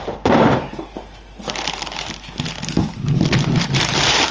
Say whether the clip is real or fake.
fake